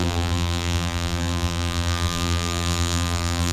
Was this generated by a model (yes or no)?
yes